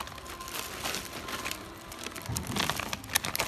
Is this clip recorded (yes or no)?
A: yes